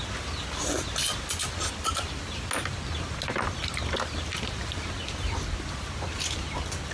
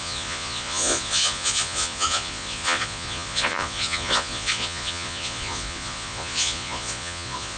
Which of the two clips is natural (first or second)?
first